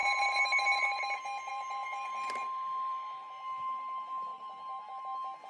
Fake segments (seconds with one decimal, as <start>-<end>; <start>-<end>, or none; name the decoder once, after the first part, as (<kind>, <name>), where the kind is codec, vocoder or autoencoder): 0.0-1.0 (vocoder, BigVGAN v2); 1.5-3.3; 4.3-5.0